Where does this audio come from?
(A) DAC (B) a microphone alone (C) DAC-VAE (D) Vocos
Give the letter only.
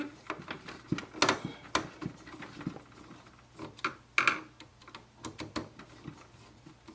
B